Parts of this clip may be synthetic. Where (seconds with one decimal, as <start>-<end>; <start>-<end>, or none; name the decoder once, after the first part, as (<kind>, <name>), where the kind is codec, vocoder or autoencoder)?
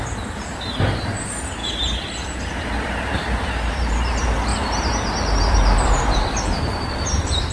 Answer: 0.7-4.5 (vocoder, BigVGAN v2); 5.4-7.5